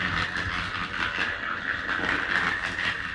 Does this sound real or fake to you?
real